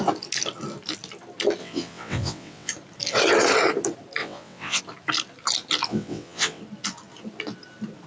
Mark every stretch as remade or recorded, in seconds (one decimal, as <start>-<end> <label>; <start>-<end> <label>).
0.0-1.6 recorded; 1.6-2.7 remade; 2.7-4.2 recorded; 4.2-4.8 remade; 4.8-5.9 recorded; 5.9-6.6 remade; 6.6-8.1 recorded